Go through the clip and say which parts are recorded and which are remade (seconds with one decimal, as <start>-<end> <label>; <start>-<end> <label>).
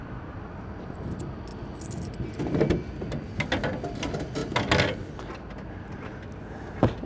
0.0-7.1 recorded